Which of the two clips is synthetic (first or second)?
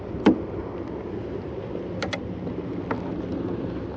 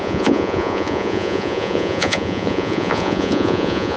second